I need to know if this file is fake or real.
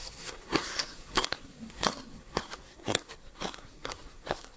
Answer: fake